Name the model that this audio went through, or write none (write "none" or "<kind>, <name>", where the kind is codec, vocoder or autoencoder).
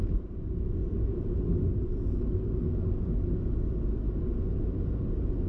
none